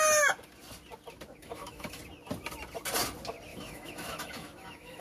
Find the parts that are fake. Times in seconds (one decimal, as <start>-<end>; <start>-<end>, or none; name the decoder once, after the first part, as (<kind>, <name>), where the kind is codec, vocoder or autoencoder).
1.4-2.0 (autoencoder, DAC-VAE); 3.5-5.0